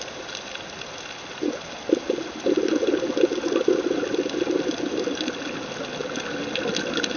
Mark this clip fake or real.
real